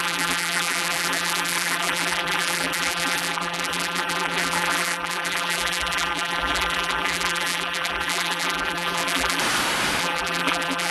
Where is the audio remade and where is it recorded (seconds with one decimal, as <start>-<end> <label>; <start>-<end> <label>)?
0.0-9.4 remade; 9.4-10.0 recorded; 10.0-10.9 remade